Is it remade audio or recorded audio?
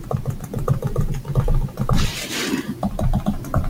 remade